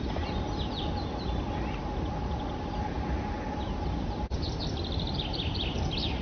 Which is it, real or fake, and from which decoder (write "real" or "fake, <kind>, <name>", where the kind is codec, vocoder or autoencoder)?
real